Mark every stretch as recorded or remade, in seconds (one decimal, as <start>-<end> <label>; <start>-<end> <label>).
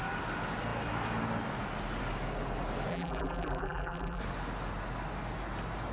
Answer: 0.0-2.9 recorded; 2.9-4.2 remade; 4.2-5.9 recorded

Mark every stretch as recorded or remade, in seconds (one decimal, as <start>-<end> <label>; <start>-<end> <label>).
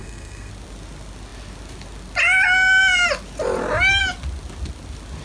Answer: 0.0-0.5 remade; 0.5-5.2 recorded